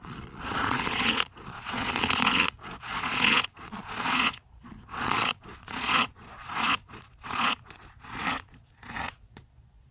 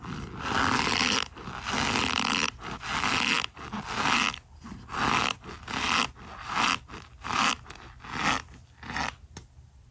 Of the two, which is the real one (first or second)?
second